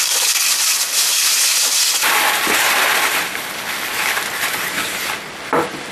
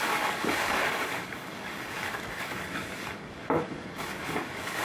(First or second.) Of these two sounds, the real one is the first